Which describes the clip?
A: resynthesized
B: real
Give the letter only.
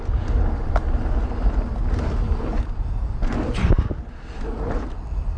B